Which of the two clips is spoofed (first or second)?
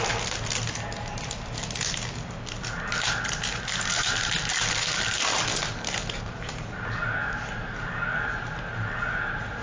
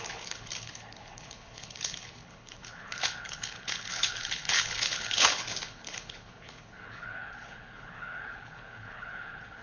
second